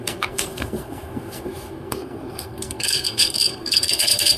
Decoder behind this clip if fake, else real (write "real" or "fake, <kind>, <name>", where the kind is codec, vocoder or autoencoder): fake, codec, SNAC